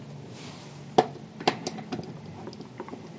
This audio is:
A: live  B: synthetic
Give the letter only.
A